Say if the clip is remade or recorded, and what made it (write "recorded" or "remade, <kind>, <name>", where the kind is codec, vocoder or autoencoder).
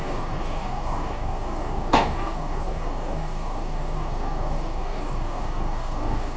remade, codec, DAC